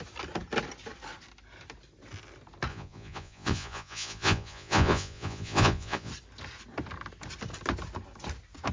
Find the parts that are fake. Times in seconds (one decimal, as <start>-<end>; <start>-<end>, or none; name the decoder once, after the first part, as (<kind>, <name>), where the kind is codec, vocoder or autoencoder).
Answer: 2.7-6.1 (vocoder, Vocos)